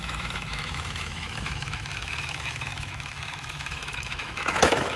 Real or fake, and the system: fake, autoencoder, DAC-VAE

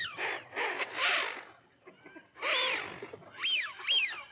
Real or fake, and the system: real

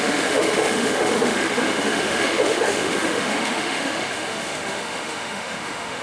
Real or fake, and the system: fake, autoencoder, DAC-VAE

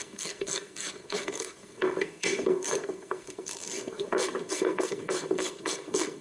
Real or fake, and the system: fake, codec, SNAC